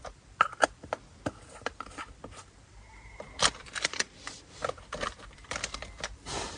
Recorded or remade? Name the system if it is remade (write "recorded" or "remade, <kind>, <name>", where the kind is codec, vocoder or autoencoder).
remade, vocoder, BigVGAN v2